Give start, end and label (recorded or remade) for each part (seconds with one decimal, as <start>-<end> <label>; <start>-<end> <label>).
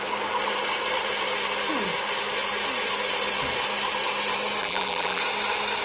0.0-4.6 recorded; 4.6-5.2 remade; 5.2-5.8 recorded